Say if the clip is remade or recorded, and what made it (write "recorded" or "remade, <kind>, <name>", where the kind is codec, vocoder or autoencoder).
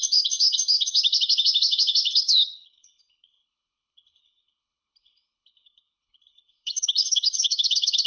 remade, codec, HILCodec